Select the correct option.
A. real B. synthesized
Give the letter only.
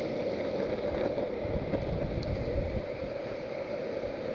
B